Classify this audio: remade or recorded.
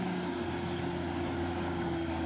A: remade